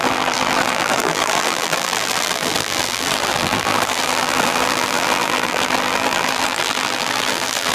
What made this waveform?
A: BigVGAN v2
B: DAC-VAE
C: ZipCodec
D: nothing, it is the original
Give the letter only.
A